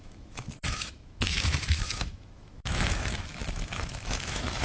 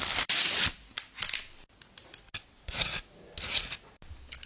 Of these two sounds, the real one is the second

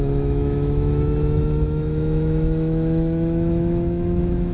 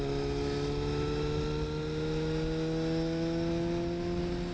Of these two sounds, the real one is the second